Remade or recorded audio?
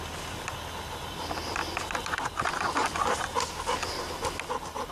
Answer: recorded